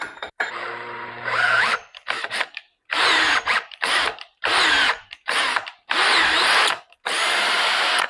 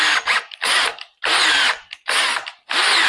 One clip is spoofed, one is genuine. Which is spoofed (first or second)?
first